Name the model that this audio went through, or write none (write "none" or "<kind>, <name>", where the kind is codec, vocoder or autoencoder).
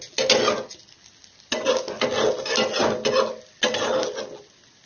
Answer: none